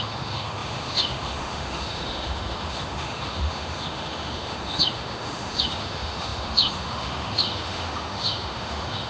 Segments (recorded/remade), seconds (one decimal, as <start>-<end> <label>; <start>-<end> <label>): 0.0-9.1 remade